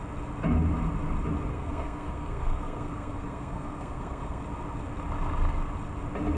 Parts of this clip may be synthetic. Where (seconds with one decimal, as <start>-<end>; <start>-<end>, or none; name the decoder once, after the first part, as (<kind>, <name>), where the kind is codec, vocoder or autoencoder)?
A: 1.5-4.4 (codec, SNAC)